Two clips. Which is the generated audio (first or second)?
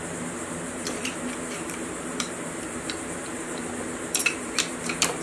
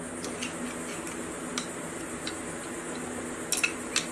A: first